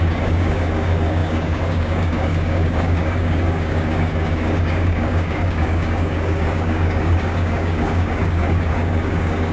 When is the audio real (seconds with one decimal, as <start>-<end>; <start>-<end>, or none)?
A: none